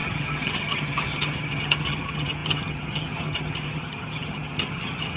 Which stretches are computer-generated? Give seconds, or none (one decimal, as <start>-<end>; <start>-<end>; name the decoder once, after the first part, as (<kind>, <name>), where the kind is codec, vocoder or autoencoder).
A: 0.0-5.2 (vocoder, HiFi-GAN)